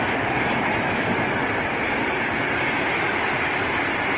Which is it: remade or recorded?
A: recorded